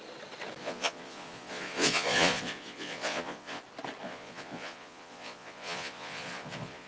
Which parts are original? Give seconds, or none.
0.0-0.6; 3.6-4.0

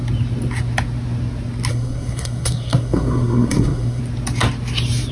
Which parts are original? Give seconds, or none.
0.0-1.7; 4.0-5.1

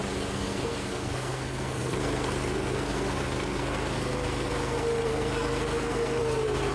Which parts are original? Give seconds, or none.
none

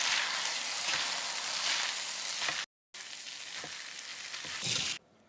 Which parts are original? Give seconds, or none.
0.0-5.3

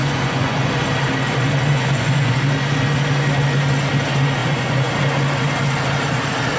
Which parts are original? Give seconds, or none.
0.7-1.7; 2.4-4.4; 4.9-6.6

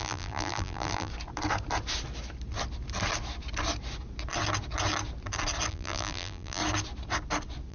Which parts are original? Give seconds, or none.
1.1-5.7; 6.6-7.7